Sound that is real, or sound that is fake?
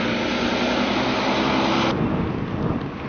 real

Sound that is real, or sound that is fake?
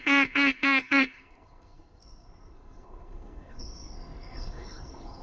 fake